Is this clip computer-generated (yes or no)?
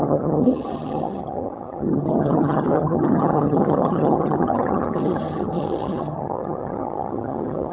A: yes